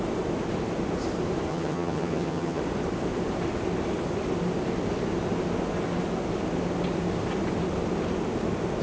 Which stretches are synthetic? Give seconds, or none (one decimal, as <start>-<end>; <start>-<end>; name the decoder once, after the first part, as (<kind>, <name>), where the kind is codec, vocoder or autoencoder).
1.5-2.6 (vocoder, HiFi-GAN)